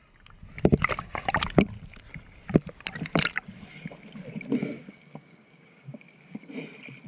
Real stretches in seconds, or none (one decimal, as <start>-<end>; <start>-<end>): 0.0-4.6; 6.5-7.1